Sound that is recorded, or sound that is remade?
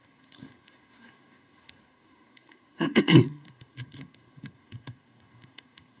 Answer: remade